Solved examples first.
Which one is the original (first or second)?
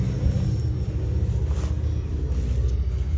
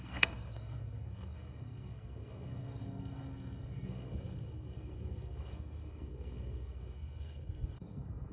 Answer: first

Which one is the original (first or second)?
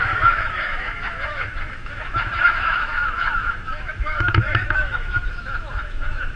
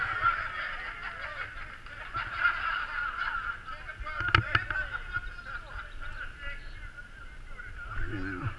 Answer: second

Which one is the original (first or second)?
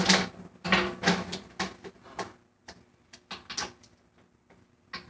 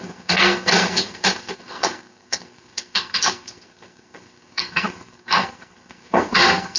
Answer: first